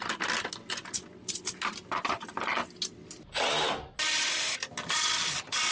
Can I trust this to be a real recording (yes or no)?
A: yes